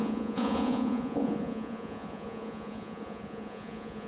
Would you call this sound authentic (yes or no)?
no